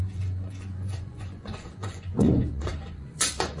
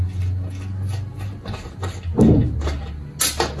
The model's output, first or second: first